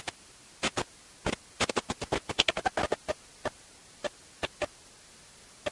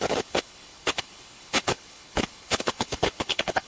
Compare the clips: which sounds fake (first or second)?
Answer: second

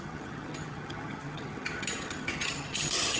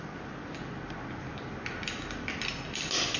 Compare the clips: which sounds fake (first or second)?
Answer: first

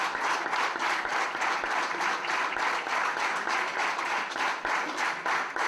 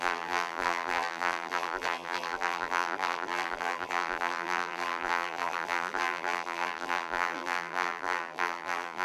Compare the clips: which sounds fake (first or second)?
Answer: second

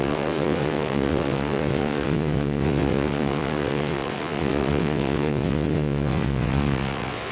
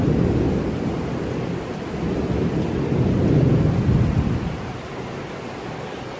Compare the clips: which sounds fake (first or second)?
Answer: first